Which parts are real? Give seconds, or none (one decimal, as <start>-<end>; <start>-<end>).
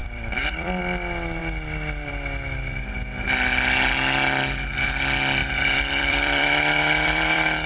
0.8-1.4; 2.1-5.4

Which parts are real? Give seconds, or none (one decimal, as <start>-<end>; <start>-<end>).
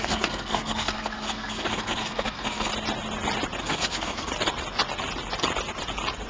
2.7-3.6; 4.3-6.3